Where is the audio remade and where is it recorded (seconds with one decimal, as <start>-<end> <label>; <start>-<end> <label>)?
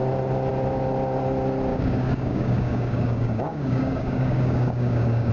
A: 0.0-1.7 recorded; 1.7-5.3 remade